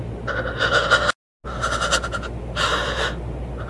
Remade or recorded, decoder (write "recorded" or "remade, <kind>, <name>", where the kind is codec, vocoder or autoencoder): recorded